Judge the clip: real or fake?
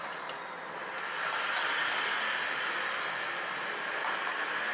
real